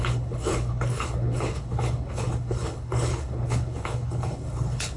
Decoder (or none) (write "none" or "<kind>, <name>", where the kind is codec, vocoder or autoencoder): codec, HILCodec